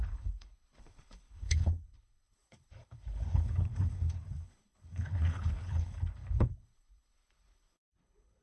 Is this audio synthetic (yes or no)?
yes